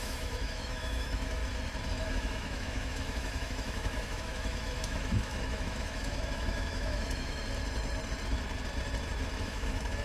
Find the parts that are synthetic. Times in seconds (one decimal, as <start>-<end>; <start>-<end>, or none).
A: 0.0-1.4; 1.9-7.4; 9.4-10.0